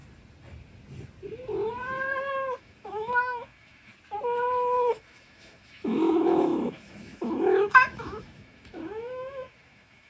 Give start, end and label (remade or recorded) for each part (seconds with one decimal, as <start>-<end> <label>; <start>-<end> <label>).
0.0-2.6 recorded; 2.6-3.9 remade; 3.9-4.9 recorded; 4.9-10.1 remade